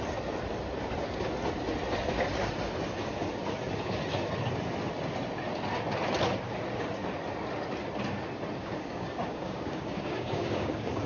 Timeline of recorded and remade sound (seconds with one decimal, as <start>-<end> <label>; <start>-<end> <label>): 0.0-8.6 recorded; 8.6-11.1 remade

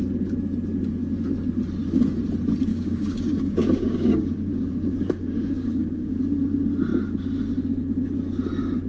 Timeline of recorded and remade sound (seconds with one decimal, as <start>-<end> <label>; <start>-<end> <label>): 0.0-2.7 recorded; 2.7-6.2 remade; 6.2-8.9 recorded

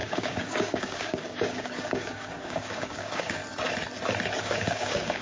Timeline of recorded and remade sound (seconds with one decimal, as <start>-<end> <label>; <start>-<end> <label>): 0.0-3.4 remade; 3.4-4.4 recorded; 4.4-5.2 remade

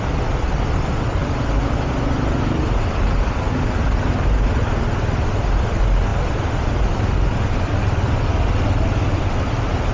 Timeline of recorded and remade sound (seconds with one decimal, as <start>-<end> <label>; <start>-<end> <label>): 0.0-9.9 recorded

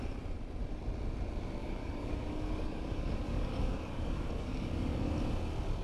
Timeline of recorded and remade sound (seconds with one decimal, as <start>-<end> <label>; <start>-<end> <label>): 0.0-1.6 recorded; 1.6-5.1 remade; 5.1-5.8 recorded